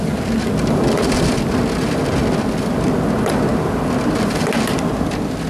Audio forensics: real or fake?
real